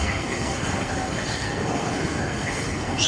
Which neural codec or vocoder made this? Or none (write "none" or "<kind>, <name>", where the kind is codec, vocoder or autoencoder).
codec, SNAC